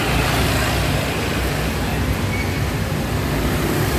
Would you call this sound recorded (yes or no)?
yes